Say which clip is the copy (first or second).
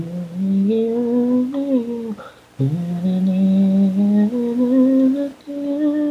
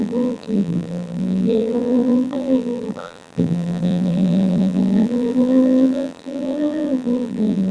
second